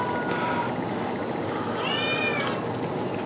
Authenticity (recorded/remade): recorded